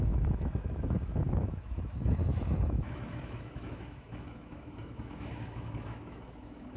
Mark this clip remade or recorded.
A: remade